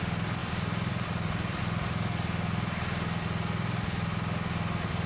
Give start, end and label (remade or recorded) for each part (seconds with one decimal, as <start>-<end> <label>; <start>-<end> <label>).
0.0-0.4 recorded; 0.4-1.6 remade; 1.6-5.1 recorded